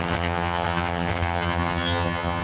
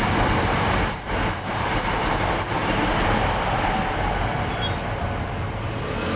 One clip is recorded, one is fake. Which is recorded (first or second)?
second